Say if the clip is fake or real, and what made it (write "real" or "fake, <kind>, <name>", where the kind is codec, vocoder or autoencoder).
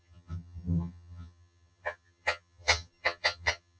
fake, vocoder, HiFi-GAN